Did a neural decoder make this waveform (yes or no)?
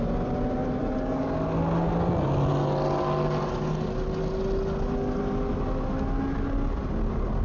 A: no